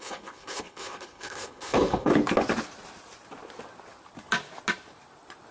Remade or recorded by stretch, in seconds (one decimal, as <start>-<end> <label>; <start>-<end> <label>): 0.0-2.1 remade; 2.1-5.5 recorded